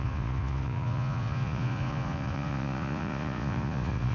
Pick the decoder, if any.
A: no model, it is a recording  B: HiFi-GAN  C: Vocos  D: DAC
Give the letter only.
C